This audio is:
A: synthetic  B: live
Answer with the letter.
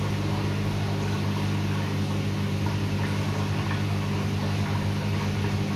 B